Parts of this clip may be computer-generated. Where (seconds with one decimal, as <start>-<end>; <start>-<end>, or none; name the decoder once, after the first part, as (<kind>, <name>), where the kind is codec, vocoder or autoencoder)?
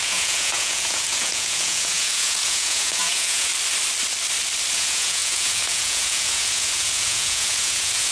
0.0-3.5 (vocoder, Vocos); 4.7-8.1